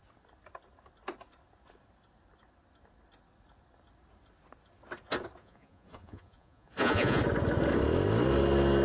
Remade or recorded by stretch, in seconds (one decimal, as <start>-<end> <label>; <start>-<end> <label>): 0.0-5.4 recorded; 5.4-7.2 remade; 7.2-8.8 recorded